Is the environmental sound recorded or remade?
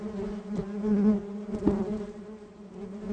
recorded